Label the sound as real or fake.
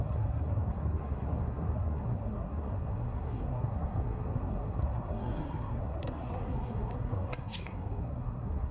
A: fake